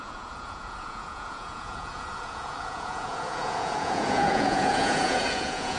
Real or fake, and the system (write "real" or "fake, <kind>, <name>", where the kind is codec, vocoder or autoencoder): fake, vocoder, Vocos